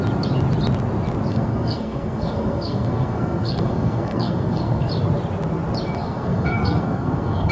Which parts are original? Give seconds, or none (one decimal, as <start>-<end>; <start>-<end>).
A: 0.0-1.3; 4.9-6.0